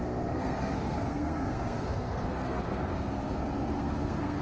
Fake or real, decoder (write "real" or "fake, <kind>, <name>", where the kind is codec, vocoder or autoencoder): fake, codec, SNAC